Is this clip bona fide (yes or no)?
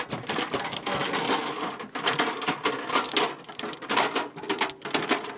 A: yes